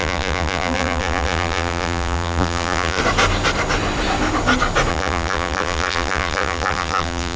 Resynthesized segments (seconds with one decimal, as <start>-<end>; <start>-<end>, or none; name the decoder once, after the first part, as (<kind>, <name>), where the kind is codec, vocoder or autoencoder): 0.0-3.0 (vocoder, BigVGAN v2); 4.9-7.4